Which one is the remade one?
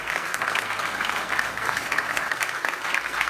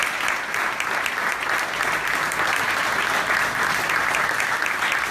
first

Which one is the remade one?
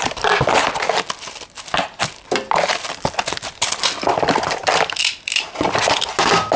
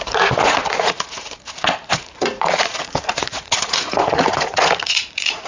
second